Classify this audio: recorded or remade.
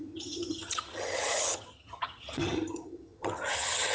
remade